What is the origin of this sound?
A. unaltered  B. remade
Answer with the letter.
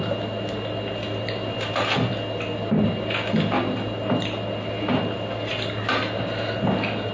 A